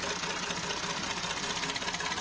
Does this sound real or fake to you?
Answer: real